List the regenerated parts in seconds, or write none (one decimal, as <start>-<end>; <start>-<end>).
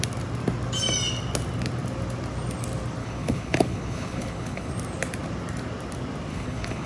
3.0-4.7; 6.3-6.9